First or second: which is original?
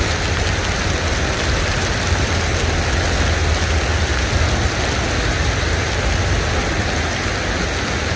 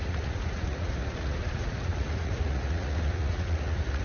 first